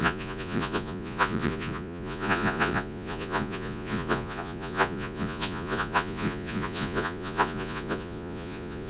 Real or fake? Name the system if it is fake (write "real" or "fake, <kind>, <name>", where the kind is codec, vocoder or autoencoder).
fake, vocoder, Vocos